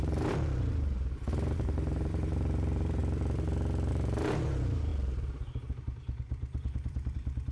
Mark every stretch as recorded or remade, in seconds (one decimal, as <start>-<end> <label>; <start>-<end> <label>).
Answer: 0.0-3.0 remade; 3.0-3.9 recorded; 3.9-4.9 remade; 4.9-5.7 recorded; 5.7-7.5 remade